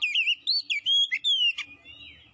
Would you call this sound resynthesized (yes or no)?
no